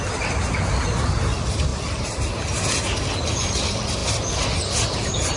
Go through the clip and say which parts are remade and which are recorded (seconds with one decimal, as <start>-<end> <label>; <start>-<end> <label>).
0.0-5.4 recorded